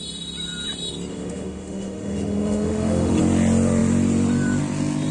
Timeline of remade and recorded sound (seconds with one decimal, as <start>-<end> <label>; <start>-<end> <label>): 0.0-1.1 recorded; 1.1-3.2 remade; 3.2-5.1 recorded